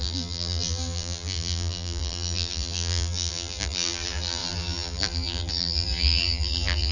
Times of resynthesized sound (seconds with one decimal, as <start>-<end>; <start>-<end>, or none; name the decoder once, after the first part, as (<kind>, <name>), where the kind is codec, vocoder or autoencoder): 0.0-6.9 (vocoder, BigVGAN v2)